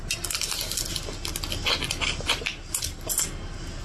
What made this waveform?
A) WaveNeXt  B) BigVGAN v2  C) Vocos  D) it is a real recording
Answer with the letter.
D